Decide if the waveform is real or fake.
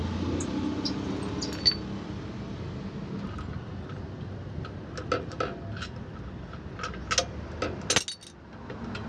real